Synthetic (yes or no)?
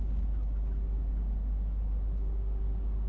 no